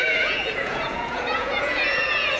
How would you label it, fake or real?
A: fake